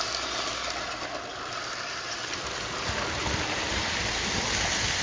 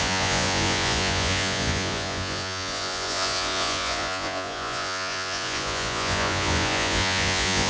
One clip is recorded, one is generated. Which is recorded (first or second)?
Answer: first